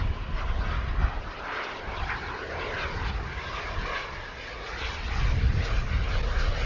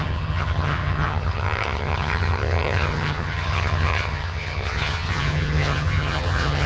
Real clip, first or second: first